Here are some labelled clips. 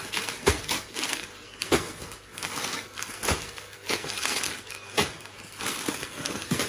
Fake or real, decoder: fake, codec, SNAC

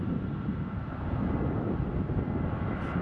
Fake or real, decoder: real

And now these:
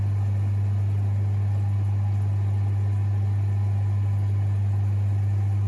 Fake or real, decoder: real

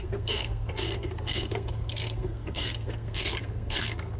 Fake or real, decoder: fake, codec, SNAC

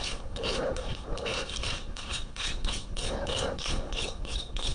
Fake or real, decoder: fake, codec, SNAC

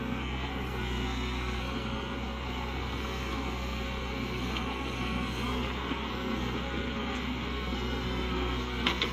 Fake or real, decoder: fake, codec, SNAC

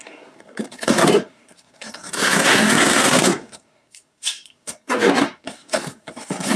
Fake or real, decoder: fake, codec, SNAC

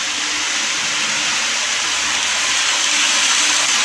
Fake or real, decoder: real